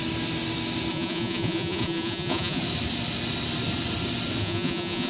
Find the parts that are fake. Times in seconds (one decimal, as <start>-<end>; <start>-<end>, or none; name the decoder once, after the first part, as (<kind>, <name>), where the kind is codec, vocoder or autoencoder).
0.9-2.6 (vocoder, Vocos); 4.4-5.1